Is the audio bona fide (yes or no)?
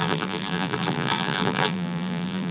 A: no